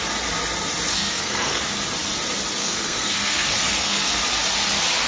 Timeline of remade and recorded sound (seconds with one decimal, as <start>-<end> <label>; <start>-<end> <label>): 0.0-0.9 recorded; 0.9-1.6 remade; 1.6-2.6 recorded; 2.6-4.2 remade; 4.2-5.1 recorded